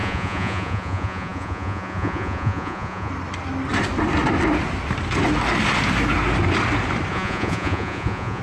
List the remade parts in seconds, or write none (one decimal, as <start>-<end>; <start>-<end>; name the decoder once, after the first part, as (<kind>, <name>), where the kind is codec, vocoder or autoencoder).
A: 0.0-3.1 (vocoder, Vocos); 7.1-8.4

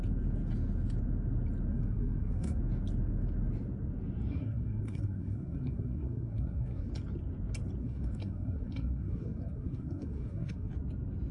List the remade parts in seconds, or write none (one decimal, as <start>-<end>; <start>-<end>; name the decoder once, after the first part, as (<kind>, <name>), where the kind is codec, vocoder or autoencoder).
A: 1.7-2.6 (codec, SNAC); 4.3-6.9; 7.8-10.7

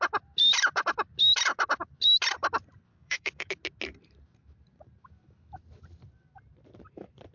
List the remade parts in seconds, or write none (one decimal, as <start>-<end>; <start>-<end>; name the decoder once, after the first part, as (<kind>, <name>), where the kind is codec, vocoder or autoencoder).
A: 2.9-3.5 (codec, DAC)

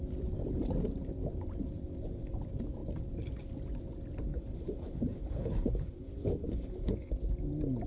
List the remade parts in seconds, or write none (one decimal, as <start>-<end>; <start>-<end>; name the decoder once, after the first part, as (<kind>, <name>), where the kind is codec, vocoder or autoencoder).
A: 4.3-7.1 (codec, HILCodec)

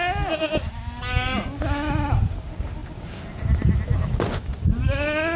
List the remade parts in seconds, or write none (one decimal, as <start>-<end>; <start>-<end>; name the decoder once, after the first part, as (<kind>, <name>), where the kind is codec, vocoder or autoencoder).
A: none